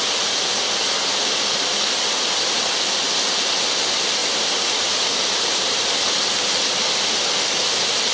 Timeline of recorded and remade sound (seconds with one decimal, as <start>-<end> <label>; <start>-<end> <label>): 0.0-8.1 recorded